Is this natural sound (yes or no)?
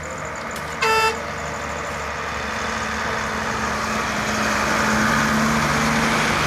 yes